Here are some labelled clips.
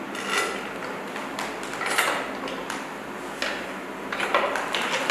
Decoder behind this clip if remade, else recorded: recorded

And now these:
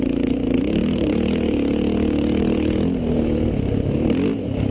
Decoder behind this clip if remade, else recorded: recorded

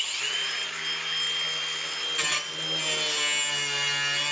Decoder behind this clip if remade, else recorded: recorded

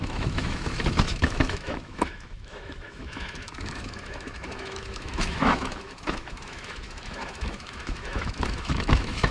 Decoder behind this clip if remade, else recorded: remade, autoencoder, DAC-VAE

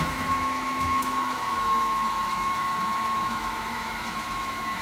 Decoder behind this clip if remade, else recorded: remade, autoencoder, DAC-VAE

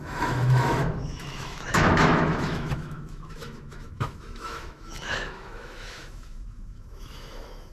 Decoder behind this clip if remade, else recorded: remade, autoencoder, DAC-VAE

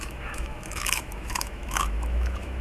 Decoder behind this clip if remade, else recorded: remade, autoencoder, DAC-VAE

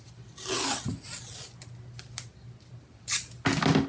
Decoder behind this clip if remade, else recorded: recorded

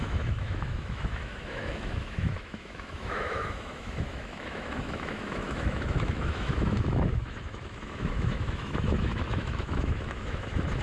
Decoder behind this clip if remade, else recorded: remade, autoencoder, DAC-VAE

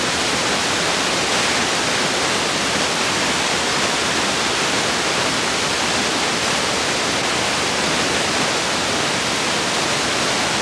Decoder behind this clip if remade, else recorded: recorded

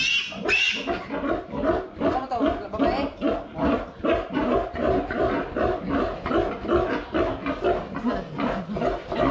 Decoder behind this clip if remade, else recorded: recorded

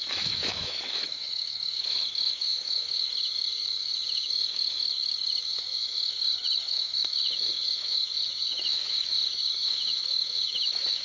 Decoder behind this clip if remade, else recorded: remade, autoencoder, DAC-VAE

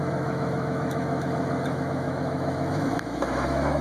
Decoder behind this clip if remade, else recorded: remade, autoencoder, DAC-VAE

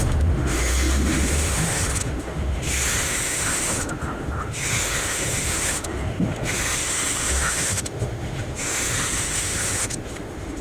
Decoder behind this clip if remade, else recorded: remade, autoencoder, DAC-VAE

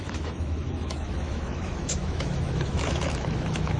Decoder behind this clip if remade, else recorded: remade, autoencoder, DAC-VAE